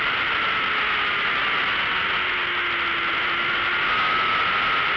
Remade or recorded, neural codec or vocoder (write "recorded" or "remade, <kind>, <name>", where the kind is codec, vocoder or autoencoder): recorded